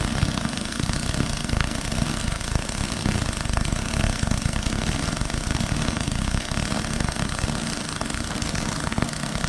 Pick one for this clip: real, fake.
fake